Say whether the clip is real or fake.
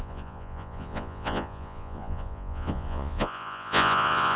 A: fake